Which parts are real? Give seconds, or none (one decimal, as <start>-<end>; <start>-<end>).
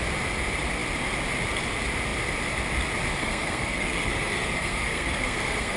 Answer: 0.0-3.2